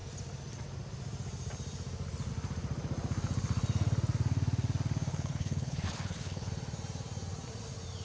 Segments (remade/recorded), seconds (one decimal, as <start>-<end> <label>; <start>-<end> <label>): 0.0-5.1 recorded; 5.1-6.5 remade; 6.5-8.0 recorded